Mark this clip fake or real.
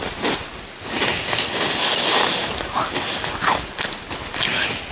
real